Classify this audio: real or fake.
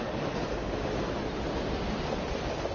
real